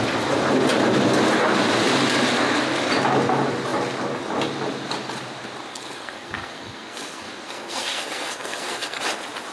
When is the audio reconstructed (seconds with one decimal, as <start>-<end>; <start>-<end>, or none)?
5.7-9.0